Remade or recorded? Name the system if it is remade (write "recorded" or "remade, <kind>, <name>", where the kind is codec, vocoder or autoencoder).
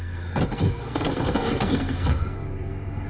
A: remade, codec, SNAC